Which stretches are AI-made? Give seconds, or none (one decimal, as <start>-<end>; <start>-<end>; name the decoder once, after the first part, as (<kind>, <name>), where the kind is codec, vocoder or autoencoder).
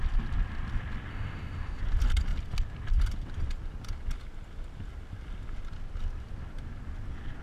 1.1-1.8 (autoencoder, DAC-VAE)